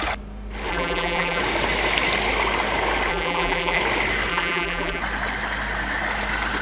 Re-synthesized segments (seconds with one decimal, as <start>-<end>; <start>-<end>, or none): 0.7-1.4; 3.1-3.8; 4.3-5.0